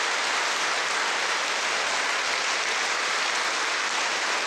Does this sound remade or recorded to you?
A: recorded